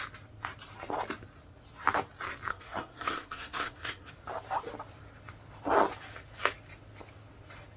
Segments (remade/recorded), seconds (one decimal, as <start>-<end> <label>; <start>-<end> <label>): 0.0-2.5 recorded; 2.5-4.1 remade; 4.1-7.8 recorded